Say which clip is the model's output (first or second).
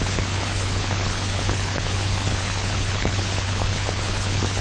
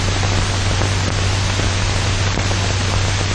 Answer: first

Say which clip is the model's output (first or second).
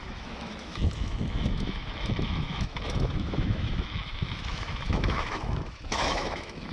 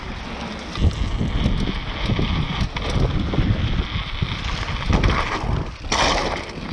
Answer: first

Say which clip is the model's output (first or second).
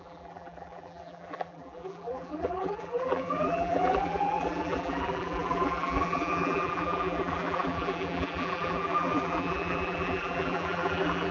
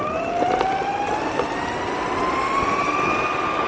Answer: first